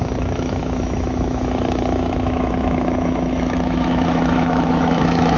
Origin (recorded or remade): remade